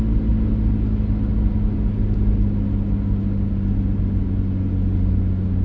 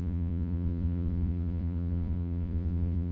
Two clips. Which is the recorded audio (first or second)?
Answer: first